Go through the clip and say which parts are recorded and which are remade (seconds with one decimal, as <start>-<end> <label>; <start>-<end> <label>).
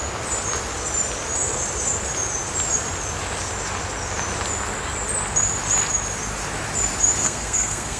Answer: 0.0-7.2 recorded; 7.2-8.0 remade